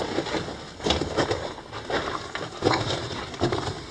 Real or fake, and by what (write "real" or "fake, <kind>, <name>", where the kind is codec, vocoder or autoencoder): real